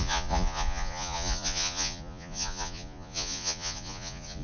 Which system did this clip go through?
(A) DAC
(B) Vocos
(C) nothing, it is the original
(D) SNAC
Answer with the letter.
B